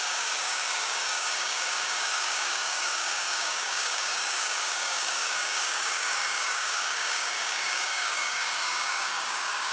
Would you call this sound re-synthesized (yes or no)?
yes